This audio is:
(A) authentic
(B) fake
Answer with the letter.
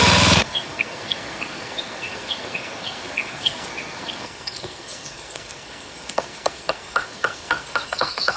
B